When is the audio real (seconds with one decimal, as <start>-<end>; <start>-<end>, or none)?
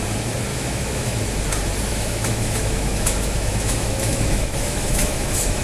0.0-0.5; 1.2-1.9